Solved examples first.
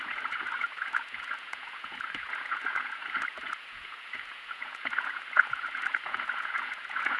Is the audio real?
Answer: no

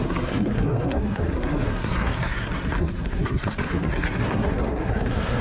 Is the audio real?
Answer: no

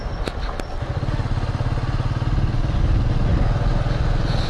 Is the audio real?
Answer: yes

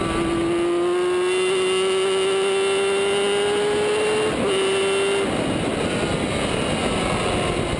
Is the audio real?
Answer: yes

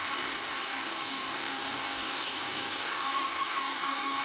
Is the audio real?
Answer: no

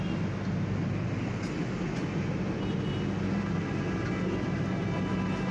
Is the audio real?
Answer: yes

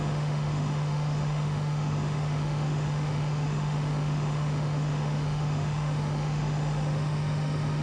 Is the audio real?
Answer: no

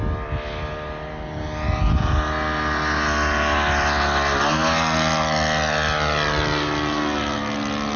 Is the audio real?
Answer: yes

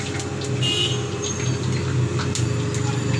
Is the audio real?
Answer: yes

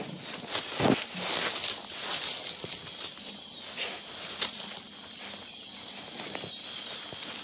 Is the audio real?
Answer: yes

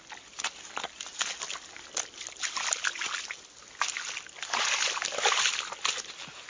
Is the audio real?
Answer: yes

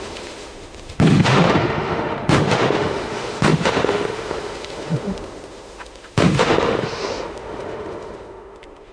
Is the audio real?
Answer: no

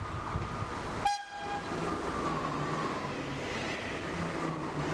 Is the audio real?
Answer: yes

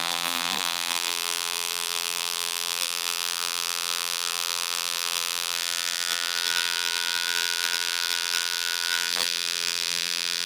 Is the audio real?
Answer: no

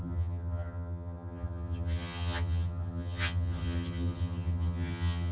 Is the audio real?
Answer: no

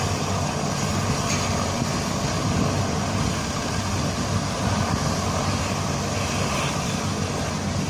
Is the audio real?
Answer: yes